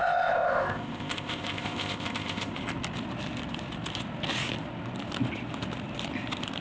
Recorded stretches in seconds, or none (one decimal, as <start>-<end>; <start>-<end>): 2.5-6.6